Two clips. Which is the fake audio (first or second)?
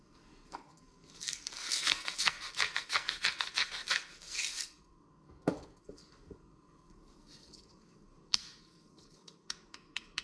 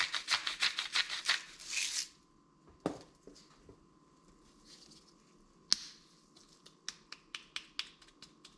first